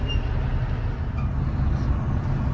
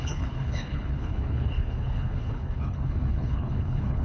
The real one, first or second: first